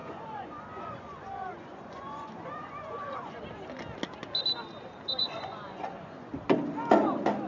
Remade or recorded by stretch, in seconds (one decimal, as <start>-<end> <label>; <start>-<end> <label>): 0.0-3.4 remade; 3.4-5.1 recorded; 5.1-6.3 remade; 6.3-7.5 recorded